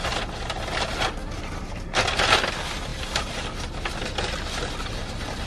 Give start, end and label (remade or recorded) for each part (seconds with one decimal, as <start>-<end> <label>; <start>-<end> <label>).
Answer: 0.0-5.5 recorded